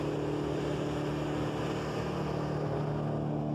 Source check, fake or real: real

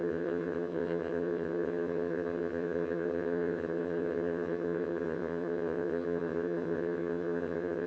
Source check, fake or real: fake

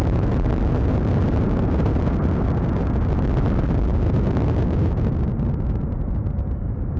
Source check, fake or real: fake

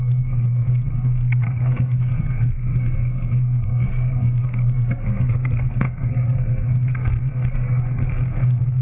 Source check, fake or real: fake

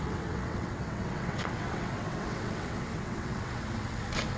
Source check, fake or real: fake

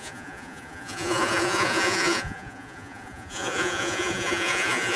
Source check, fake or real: fake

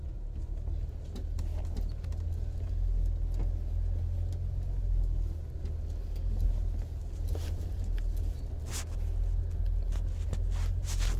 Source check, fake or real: real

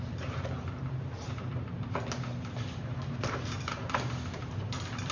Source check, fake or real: fake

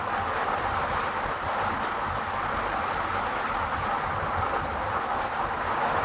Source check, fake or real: real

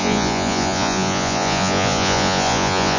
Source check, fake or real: fake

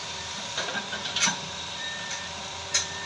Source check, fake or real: fake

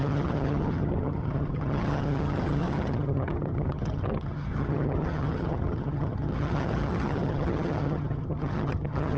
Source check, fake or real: fake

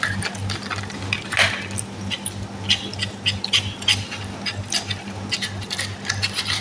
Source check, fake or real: real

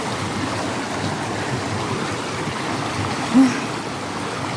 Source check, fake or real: real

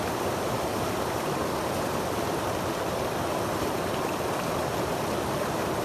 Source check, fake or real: fake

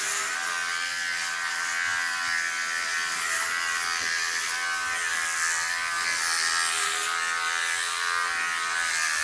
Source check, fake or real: real